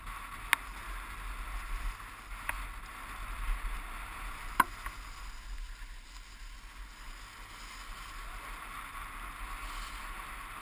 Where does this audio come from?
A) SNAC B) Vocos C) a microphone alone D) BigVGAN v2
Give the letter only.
C